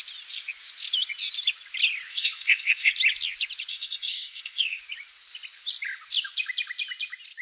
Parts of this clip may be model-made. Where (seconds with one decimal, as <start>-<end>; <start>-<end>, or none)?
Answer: 2.1-2.9; 3.7-4.8